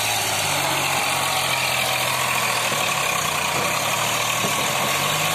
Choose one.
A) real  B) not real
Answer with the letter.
A